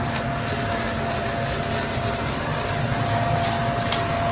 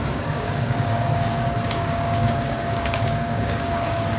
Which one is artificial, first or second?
second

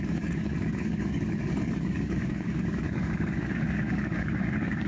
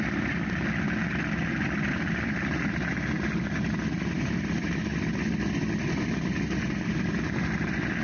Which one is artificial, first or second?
first